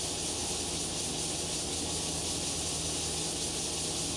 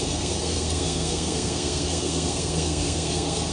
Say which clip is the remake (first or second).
second